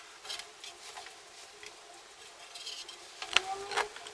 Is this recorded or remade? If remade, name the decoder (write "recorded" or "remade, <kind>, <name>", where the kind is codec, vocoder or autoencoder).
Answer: recorded